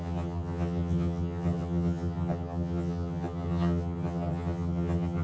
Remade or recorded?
remade